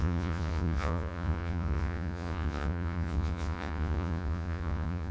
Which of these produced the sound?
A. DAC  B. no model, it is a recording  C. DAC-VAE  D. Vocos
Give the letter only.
D